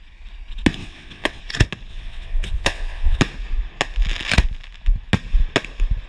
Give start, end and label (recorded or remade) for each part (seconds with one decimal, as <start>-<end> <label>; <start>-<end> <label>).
0.0-0.8 recorded; 0.8-1.4 remade; 1.4-1.9 recorded; 1.9-3.2 remade; 3.2-6.1 recorded